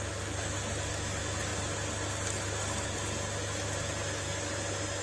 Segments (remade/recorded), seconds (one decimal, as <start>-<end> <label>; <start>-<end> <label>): 0.0-5.0 recorded